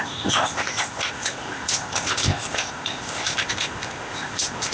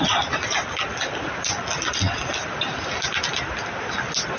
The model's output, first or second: first